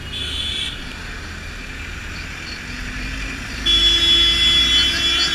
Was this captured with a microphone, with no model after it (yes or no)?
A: yes